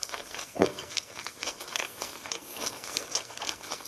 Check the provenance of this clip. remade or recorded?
remade